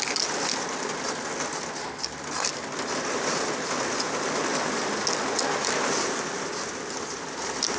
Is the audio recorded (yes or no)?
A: yes